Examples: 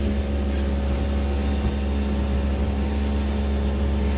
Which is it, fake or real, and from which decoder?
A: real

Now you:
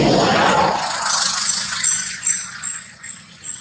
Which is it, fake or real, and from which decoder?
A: fake, vocoder, Vocos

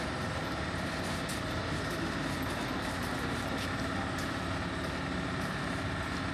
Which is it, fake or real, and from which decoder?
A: real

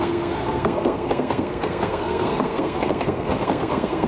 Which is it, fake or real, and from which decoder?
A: fake, codec, SNAC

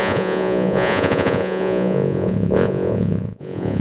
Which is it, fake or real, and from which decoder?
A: fake, vocoder, Vocos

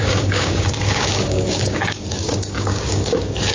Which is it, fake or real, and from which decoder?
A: fake, codec, DAC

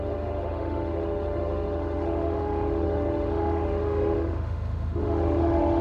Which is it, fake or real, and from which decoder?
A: fake, autoencoder, DAC-VAE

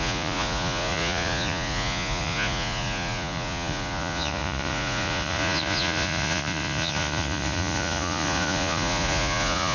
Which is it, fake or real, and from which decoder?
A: fake, vocoder, Vocos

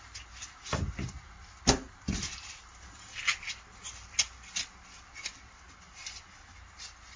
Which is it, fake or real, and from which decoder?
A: real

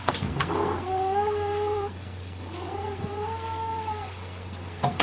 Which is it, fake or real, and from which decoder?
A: fake, codec, SNAC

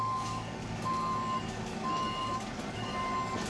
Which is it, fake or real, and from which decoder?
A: fake, codec, DAC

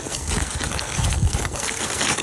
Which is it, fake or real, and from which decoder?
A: fake, codec, SNAC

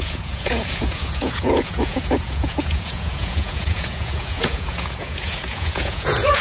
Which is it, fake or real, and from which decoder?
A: fake, vocoder, Vocos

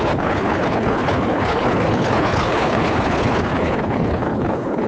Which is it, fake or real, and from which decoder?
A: fake, codec, HILCodec